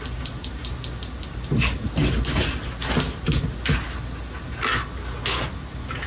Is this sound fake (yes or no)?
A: no